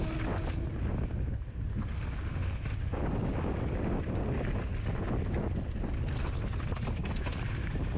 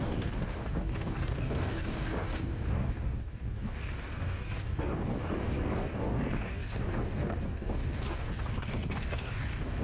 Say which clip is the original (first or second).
first